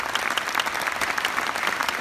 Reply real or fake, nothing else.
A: real